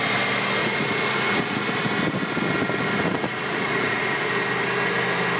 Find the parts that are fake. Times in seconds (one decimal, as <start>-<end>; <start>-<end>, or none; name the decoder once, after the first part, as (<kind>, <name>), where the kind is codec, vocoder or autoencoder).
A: 0.6-1.6 (vocoder, Vocos); 3.2-4.3